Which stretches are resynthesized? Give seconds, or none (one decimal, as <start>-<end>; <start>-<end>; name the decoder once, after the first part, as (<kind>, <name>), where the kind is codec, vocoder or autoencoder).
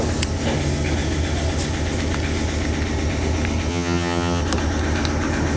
3.7-4.4 (vocoder, HiFi-GAN)